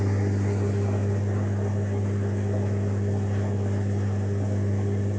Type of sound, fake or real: real